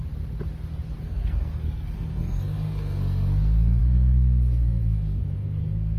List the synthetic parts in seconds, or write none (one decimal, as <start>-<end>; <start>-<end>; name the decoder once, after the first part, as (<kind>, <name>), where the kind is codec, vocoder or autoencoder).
1.0-6.0 (codec, SNAC)